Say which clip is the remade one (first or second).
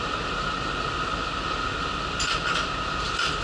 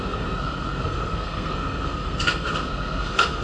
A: second